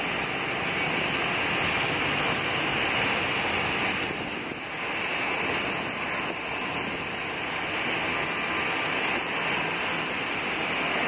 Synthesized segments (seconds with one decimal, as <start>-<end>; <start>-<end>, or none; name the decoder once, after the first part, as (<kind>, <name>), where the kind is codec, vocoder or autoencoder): none